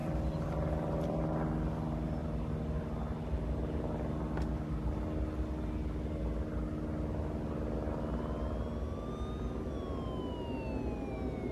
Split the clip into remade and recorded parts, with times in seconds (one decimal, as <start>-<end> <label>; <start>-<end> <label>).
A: 0.0-1.3 remade; 1.3-11.5 recorded